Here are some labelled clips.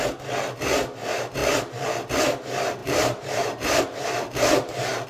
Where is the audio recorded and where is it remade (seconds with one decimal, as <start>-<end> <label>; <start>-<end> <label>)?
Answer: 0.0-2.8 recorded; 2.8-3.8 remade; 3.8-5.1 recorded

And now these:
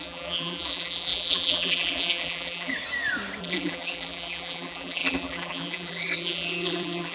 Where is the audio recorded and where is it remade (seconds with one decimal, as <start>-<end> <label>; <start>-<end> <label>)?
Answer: 0.0-2.7 remade; 2.7-3.4 recorded; 3.4-7.1 remade

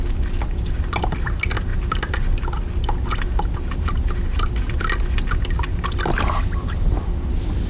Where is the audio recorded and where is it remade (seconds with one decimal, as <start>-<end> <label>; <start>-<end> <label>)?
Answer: 0.0-7.7 recorded

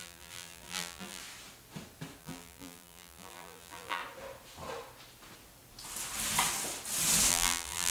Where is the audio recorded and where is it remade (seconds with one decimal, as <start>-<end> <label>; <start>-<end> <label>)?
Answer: 0.0-1.2 remade; 1.2-2.2 recorded; 2.2-4.0 remade; 4.0-7.3 recorded; 7.3-7.9 remade

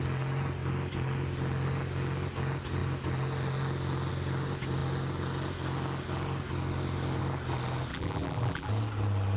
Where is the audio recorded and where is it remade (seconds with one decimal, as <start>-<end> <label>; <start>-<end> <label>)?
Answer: 0.0-7.9 recorded; 7.9-8.7 remade; 8.7-9.4 recorded